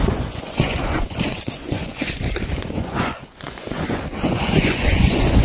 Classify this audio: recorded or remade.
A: remade